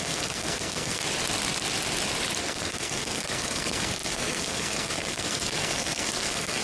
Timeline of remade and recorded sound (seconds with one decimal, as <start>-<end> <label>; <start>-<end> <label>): 0.0-1.0 remade; 1.0-2.4 recorded; 2.4-6.6 remade